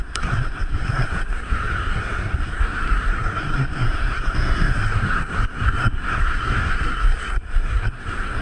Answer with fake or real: fake